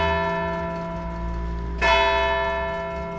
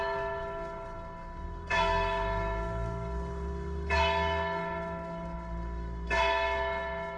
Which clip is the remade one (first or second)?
second